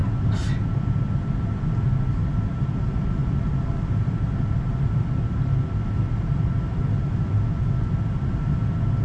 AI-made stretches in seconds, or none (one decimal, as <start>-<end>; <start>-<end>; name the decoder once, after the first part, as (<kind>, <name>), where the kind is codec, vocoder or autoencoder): none